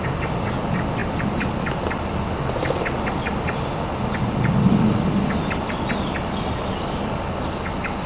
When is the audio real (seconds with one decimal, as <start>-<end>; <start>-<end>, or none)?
0.0-8.1